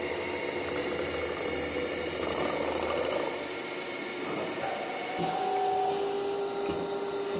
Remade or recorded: recorded